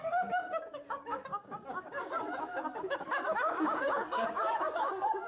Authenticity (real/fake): fake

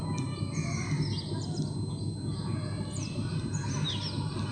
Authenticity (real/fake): real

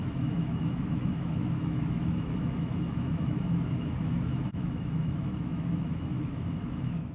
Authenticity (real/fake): fake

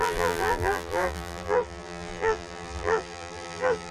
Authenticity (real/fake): fake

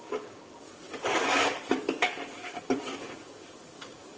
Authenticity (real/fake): fake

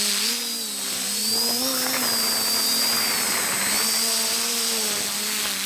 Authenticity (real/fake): real